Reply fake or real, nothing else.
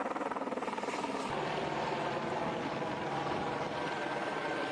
real